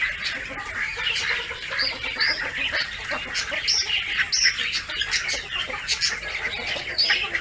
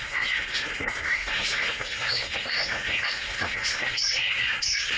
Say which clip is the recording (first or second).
first